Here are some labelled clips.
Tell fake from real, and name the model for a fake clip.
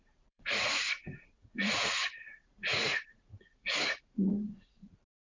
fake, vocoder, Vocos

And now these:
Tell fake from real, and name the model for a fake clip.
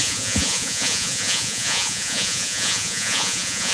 fake, vocoder, Vocos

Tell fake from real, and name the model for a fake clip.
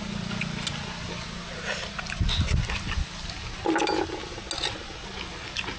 real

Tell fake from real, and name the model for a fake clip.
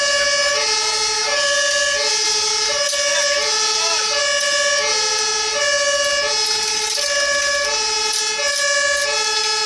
real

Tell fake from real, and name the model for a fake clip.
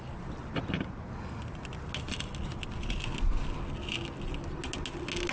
real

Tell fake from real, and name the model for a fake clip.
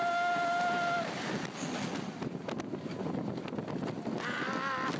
real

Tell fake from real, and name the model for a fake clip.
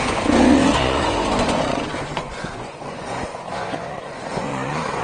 fake, vocoder, Vocos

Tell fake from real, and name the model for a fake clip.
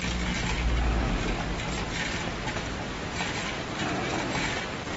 real